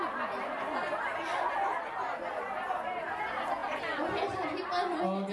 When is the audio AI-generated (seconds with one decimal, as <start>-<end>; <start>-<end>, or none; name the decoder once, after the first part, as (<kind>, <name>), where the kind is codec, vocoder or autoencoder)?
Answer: none